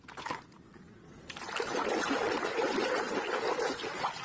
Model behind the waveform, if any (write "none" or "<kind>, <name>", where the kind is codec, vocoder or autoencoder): none